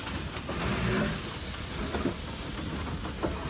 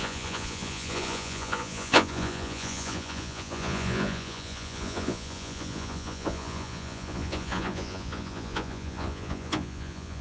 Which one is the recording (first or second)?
first